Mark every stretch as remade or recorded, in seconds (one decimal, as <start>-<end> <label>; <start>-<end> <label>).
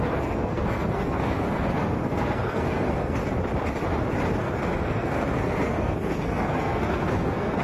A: 0.0-3.2 remade; 3.2-4.4 recorded; 4.4-7.6 remade